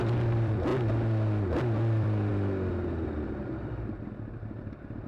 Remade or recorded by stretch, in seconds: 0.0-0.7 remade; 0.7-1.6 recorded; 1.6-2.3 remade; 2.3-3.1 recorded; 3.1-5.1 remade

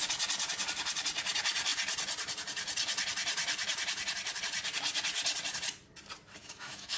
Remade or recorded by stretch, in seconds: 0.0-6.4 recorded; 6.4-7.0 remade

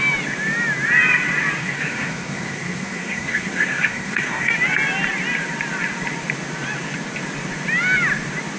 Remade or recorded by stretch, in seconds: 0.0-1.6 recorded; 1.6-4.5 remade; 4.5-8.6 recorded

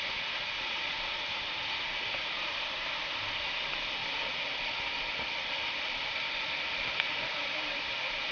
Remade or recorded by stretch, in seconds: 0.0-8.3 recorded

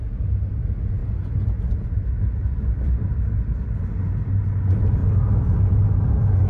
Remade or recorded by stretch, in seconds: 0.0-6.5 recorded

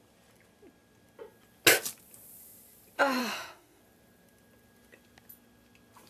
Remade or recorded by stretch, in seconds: 0.0-3.2 recorded; 3.2-3.8 remade; 3.8-6.1 recorded

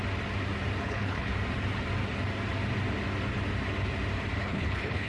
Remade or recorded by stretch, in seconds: 0.0-0.8 recorded; 0.8-1.3 remade; 1.3-4.4 recorded; 4.4-5.1 remade